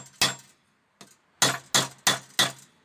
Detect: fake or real real